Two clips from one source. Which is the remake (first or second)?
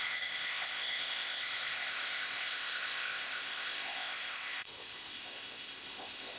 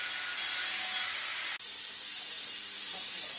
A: first